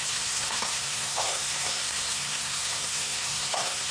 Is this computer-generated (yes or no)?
yes